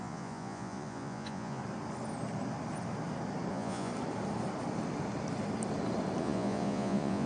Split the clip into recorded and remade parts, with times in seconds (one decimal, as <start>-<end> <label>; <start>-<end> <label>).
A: 0.0-1.6 remade; 1.6-3.5 recorded; 3.5-3.9 remade; 3.9-6.2 recorded; 6.2-7.3 remade